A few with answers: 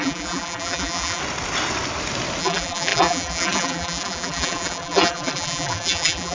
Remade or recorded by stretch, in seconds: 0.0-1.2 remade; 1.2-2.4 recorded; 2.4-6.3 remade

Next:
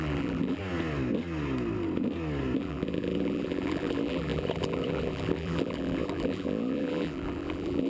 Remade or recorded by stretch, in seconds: 0.0-0.6 remade; 0.6-2.6 recorded; 2.6-7.9 remade

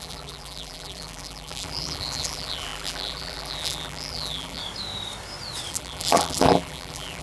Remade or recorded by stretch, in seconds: 0.0-4.6 remade; 4.6-5.7 recorded; 5.7-7.2 remade

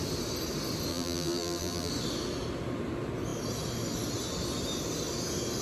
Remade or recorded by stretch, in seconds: 0.0-0.9 recorded; 0.9-1.9 remade; 1.9-5.6 recorded

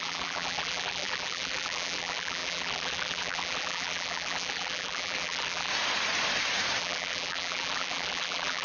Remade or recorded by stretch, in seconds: 0.0-5.7 remade; 5.7-6.8 recorded; 6.8-8.6 remade

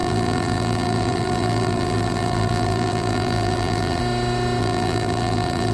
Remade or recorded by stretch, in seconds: 0.0-4.0 remade; 4.0-4.6 recorded; 4.6-5.7 remade

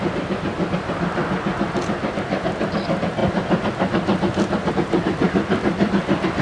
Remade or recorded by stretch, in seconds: 0.0-1.2 remade; 1.2-2.1 recorded; 2.1-6.4 remade

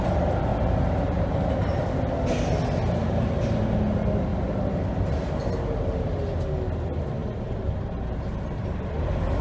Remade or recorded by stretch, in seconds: 0.0-0.5 recorded; 0.5-1.5 remade; 1.5-7.2 recorded; 7.2-9.4 remade